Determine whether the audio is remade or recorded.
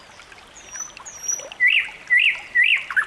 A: recorded